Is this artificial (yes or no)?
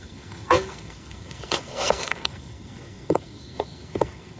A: yes